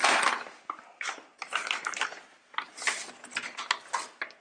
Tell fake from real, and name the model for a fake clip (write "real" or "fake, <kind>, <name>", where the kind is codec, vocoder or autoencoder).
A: real